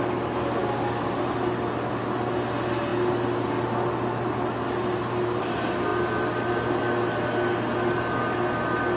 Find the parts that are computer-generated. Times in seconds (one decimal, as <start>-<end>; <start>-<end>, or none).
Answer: 0.6-1.2